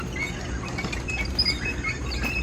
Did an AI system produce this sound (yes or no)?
no